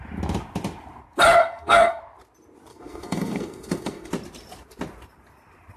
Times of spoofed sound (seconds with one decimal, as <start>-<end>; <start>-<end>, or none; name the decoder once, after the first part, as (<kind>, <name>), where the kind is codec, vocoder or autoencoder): 1.4-2.0 (codec, SNAC); 2.7-4.1